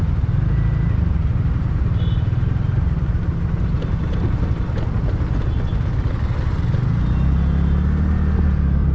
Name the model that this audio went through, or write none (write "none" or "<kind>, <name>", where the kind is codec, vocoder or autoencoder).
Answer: none